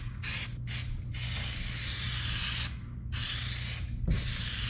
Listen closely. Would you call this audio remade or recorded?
recorded